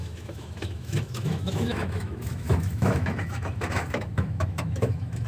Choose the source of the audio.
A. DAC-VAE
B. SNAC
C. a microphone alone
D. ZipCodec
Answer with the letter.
A